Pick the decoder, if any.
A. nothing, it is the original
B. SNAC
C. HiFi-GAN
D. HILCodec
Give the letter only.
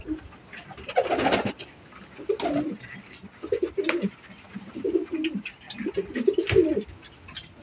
A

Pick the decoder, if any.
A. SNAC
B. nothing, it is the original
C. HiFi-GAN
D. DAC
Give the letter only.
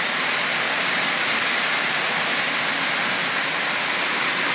B